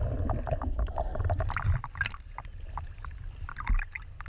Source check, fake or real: real